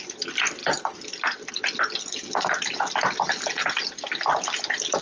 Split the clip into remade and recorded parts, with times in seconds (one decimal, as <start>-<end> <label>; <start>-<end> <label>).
0.0-5.0 recorded